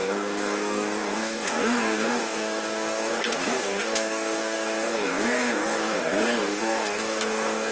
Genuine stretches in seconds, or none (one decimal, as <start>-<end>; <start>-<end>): none